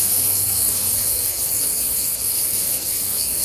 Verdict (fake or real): fake